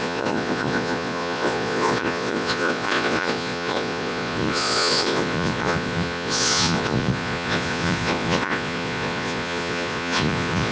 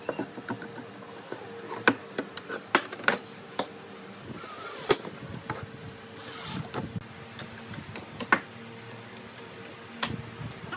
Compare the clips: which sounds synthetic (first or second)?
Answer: first